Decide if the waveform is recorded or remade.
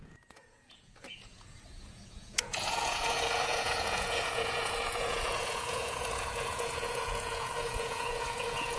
remade